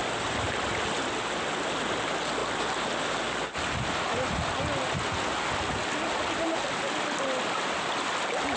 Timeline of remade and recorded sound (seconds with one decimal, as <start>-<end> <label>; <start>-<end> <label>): 0.0-8.6 recorded